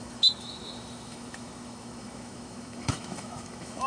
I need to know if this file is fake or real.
fake